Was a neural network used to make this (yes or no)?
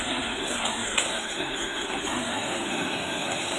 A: yes